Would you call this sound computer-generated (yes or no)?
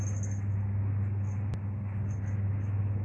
no